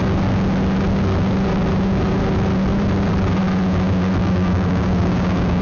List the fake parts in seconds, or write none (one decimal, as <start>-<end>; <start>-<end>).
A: 4.2-5.6